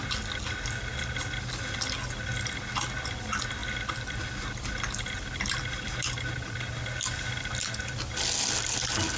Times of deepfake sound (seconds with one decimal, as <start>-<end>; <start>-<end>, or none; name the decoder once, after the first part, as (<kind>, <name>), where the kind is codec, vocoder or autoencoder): none